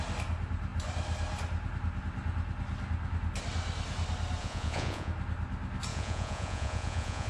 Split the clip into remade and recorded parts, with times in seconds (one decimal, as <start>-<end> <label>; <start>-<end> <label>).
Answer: 0.0-4.4 recorded; 4.4-5.1 remade; 5.1-5.9 recorded; 5.9-7.3 remade